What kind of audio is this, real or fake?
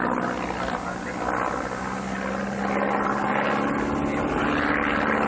real